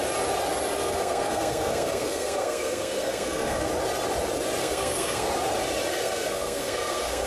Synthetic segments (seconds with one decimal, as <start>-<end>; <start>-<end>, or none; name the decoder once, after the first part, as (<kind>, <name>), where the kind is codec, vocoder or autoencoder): 0.8-3.7 (codec, SNAC); 4.6-5.3; 5.9-7.3